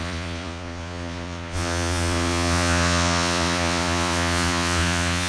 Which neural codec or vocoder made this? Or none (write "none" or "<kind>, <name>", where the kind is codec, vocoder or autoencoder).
vocoder, Vocos